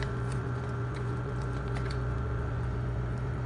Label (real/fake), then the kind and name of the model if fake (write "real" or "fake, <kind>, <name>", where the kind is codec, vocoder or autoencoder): fake, vocoder, Vocos